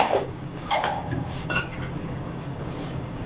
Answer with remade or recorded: remade